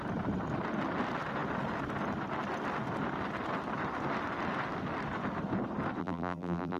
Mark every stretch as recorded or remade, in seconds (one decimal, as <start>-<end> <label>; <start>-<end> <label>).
0.0-6.0 recorded; 6.0-6.8 remade

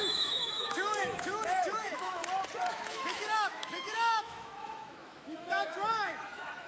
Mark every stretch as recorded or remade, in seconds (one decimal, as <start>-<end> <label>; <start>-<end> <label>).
0.0-2.2 remade; 2.2-2.7 recorded; 2.7-6.7 remade

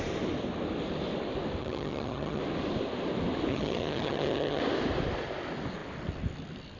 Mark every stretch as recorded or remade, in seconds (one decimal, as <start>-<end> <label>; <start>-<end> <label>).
0.0-1.6 recorded; 1.6-2.4 remade; 2.4-3.5 recorded; 3.5-4.6 remade; 4.6-6.8 recorded

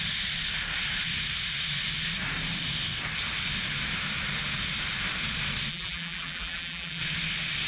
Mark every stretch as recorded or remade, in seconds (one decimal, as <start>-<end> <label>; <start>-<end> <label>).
0.0-5.7 recorded; 5.7-7.0 remade; 7.0-7.7 recorded

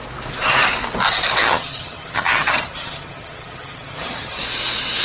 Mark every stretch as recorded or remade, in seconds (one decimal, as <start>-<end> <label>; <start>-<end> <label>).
0.0-1.4 recorded; 1.4-4.4 remade; 4.4-5.0 recorded

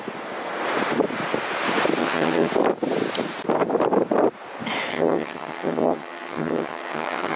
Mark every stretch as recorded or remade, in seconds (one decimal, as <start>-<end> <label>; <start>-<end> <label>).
0.0-2.0 recorded; 2.0-2.5 remade; 2.5-4.9 recorded; 4.9-7.4 remade